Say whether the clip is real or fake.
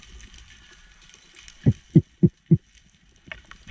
real